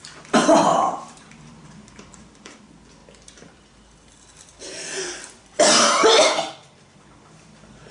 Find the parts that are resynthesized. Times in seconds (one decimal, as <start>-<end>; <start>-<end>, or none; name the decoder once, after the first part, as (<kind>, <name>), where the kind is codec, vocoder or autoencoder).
0.7-2.6 (vocoder, BigVGAN v2)